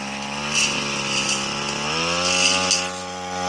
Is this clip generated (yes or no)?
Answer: no